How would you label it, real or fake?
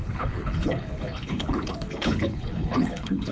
fake